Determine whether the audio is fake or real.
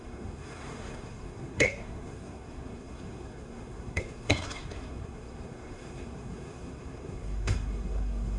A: fake